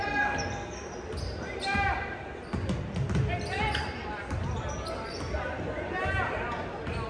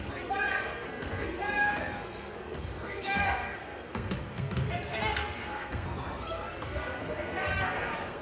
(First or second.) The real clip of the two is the first